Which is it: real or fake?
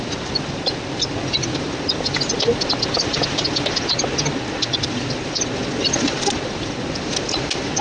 real